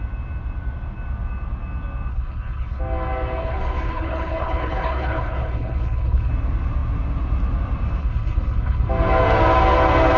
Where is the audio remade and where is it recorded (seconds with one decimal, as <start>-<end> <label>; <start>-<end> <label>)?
0.0-2.1 recorded; 2.1-2.8 remade; 2.8-3.4 recorded; 3.4-6.3 remade; 6.3-8.0 recorded; 8.0-8.9 remade; 8.9-10.2 recorded